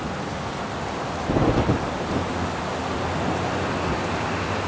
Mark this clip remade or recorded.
recorded